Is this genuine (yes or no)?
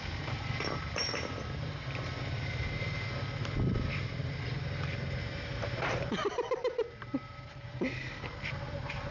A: no